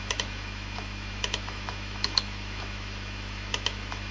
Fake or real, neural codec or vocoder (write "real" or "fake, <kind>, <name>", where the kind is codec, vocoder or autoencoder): fake, autoencoder, DAC-VAE